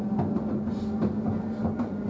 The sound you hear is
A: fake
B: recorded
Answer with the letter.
B